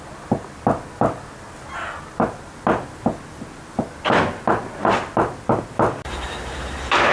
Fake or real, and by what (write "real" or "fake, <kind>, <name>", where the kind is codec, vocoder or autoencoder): real